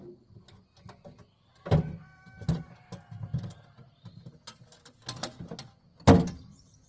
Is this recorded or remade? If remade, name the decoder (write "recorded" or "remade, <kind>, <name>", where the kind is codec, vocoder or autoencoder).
recorded